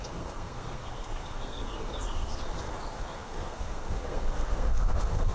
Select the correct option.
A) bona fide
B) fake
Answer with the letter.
B